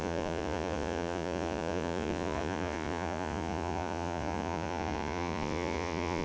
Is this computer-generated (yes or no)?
yes